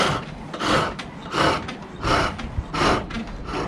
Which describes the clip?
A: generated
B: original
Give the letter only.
B